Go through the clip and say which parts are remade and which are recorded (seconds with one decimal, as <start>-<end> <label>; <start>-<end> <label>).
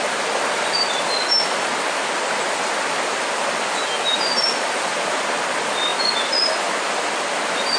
0.0-7.8 recorded